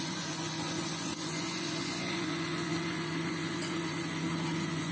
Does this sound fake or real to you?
fake